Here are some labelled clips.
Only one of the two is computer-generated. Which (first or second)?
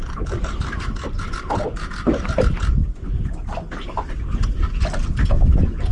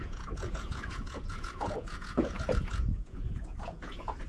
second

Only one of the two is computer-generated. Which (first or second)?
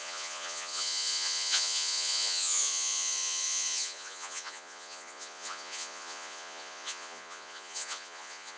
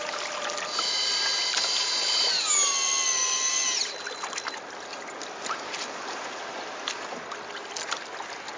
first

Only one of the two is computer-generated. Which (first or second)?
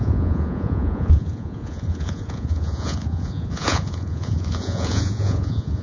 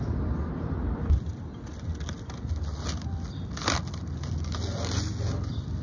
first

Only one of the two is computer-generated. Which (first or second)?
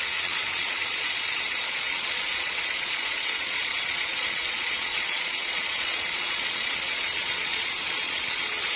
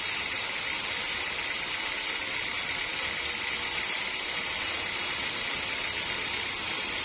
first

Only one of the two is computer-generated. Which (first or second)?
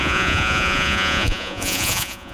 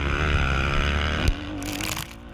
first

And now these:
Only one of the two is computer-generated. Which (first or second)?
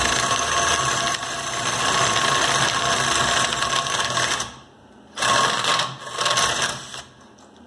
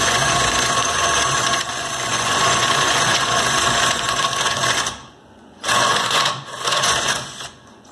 second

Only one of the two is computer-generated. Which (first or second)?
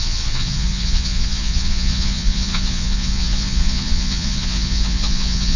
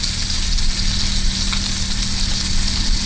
first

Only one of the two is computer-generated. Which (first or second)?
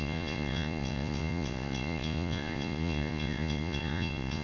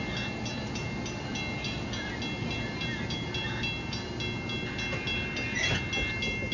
first